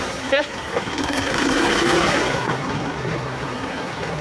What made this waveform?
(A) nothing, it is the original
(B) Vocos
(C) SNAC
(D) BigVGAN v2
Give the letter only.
C